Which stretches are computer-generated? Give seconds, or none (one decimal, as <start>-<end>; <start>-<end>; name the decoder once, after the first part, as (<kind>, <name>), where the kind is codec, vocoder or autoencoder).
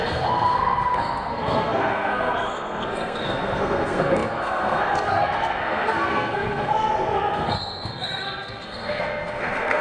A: 0.0-9.8 (codec, SNAC)